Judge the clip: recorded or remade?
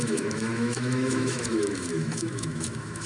remade